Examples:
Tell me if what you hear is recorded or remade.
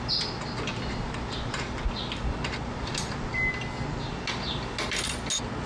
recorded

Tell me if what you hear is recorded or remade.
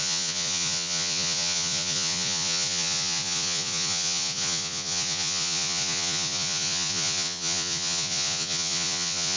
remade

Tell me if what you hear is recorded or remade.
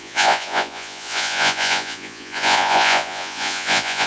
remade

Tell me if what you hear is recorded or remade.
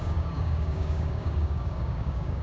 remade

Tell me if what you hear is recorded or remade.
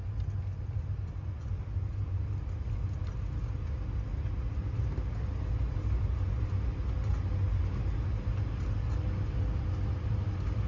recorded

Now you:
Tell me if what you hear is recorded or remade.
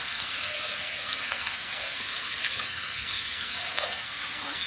remade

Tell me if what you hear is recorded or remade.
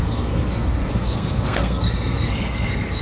remade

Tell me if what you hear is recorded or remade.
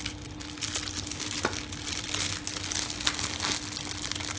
recorded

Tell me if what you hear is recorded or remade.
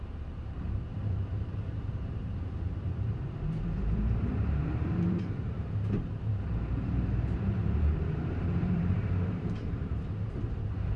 remade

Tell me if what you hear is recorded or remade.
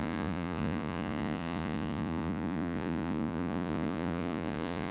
remade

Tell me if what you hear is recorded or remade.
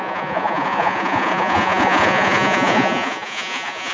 remade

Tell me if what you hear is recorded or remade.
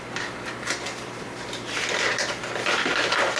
recorded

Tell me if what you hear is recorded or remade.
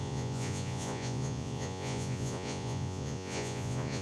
remade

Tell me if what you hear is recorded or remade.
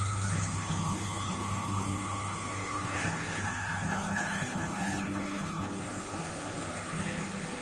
remade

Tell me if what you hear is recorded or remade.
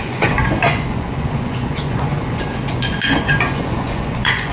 remade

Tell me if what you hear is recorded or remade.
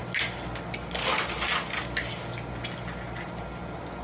recorded